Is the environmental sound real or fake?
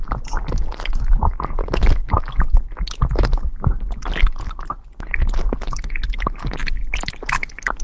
real